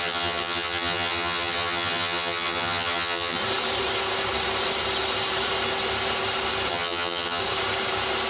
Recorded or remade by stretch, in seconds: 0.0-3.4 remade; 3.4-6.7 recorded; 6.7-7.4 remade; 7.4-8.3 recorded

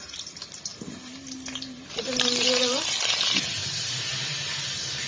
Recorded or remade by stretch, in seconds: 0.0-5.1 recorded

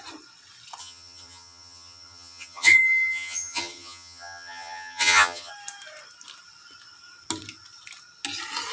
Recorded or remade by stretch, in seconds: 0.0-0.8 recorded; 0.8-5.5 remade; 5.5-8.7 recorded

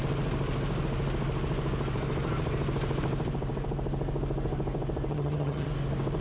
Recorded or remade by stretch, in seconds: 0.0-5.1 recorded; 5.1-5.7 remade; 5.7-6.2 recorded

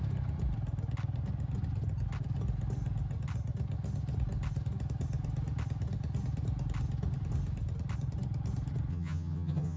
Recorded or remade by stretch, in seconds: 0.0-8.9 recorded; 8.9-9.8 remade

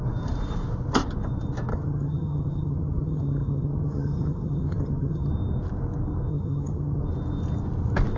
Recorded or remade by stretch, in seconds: 0.0-1.7 recorded; 1.7-5.3 remade; 5.3-6.3 recorded; 6.3-7.0 remade; 7.0-8.2 recorded

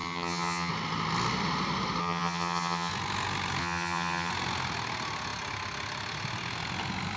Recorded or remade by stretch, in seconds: 0.0-0.7 remade; 0.7-2.0 recorded; 2.0-2.9 remade; 2.9-3.6 recorded; 3.6-4.3 remade; 4.3-7.2 recorded

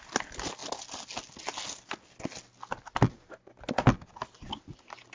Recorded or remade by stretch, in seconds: 0.0-5.1 recorded